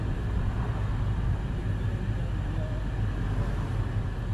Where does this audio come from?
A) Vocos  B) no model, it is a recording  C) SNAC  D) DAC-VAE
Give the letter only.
B